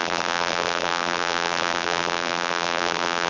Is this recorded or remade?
remade